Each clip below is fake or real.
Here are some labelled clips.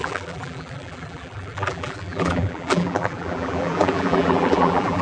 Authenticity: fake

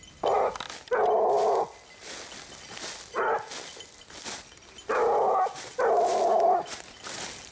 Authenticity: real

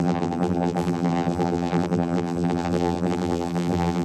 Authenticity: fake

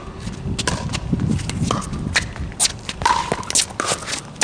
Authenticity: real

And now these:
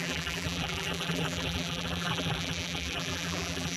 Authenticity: fake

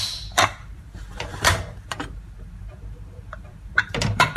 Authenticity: fake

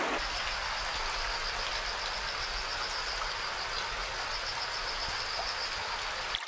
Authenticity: real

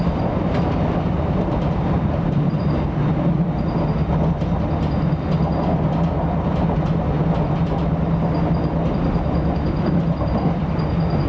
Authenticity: real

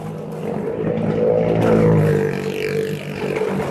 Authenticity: real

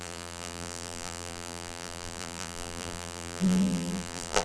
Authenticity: fake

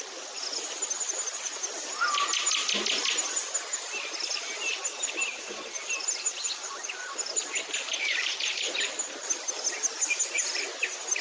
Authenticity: real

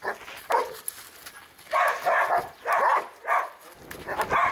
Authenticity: real